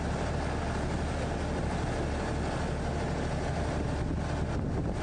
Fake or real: real